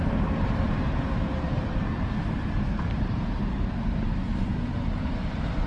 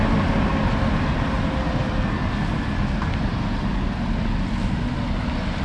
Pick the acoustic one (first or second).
second